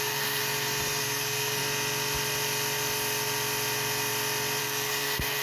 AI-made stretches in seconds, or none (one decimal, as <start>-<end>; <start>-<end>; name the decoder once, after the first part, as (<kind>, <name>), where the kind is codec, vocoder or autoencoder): 0.0-0.4 (codec, SNAC); 1.0-1.6; 4.6-5.4